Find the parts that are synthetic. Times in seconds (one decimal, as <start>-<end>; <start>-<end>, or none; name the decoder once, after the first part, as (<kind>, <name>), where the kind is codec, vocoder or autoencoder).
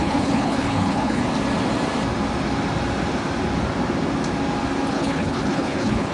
0.0-1.2 (codec, HILCodec); 4.9-6.1